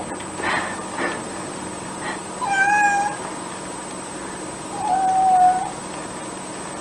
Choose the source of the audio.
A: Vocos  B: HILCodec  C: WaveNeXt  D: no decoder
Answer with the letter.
D